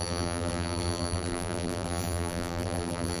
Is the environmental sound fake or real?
fake